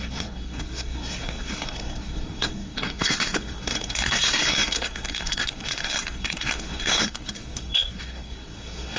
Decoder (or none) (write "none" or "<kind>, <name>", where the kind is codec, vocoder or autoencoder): codec, SNAC